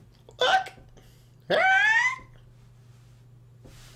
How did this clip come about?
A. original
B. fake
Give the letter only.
A